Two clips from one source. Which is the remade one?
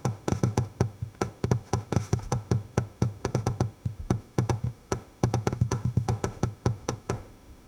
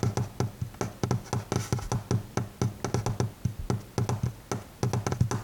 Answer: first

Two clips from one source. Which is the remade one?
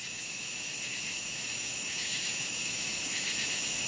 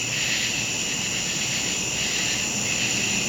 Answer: first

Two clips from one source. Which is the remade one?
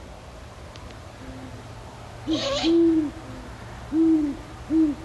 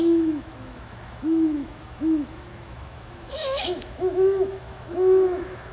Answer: second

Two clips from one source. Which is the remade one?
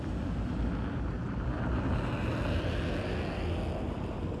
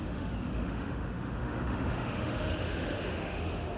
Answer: second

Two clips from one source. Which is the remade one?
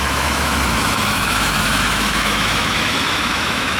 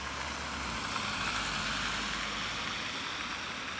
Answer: first